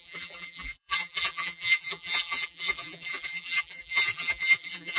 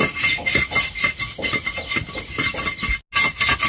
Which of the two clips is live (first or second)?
second